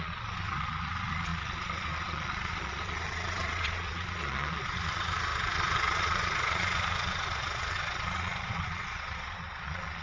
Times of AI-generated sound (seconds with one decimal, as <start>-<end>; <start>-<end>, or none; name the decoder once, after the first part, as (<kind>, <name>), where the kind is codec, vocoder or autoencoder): 0.0-10.0 (vocoder, Vocos)